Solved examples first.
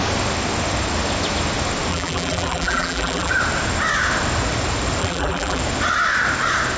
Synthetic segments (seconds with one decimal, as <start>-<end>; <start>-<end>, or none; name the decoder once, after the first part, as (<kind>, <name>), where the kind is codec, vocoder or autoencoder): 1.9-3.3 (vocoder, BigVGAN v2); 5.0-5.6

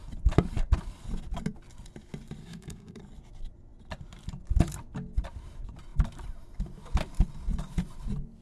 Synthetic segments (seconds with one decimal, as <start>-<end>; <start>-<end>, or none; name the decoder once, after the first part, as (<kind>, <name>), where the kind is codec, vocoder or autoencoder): 2.4-3.0 (codec, SNAC)

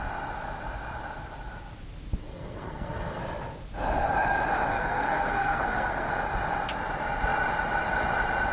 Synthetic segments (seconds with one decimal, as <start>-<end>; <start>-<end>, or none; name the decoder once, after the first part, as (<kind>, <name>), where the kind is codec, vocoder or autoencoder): 2.2-3.2 (codec, SNAC); 4.7-6.1